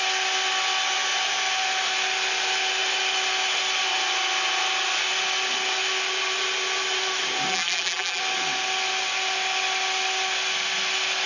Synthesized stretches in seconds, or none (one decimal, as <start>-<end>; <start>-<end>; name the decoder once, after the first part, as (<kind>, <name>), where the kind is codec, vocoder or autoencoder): 7.5-8.2 (vocoder, BigVGAN v2)